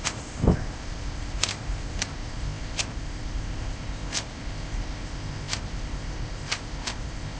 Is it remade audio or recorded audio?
remade